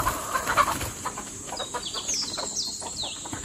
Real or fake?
real